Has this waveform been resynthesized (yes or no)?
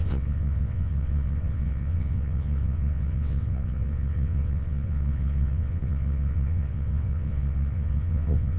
yes